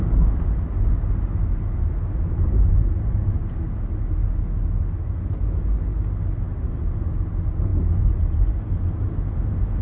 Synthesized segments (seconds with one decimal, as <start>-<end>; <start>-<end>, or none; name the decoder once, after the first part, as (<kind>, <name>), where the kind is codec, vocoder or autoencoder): none